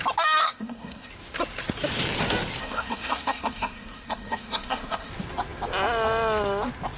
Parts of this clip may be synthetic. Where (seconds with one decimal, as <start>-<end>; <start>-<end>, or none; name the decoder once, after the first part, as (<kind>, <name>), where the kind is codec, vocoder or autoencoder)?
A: 0.4-1.1 (codec, SNAC); 2.6-5.1